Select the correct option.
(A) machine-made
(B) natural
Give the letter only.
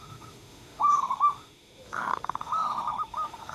A